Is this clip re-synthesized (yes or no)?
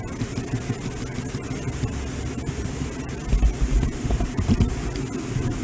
no